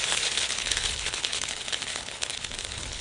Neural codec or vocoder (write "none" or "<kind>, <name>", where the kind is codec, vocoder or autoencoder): codec, HILCodec